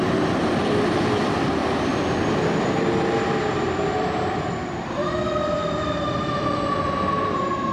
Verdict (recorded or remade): remade